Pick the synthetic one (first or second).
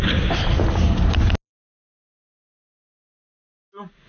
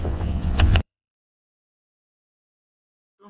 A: second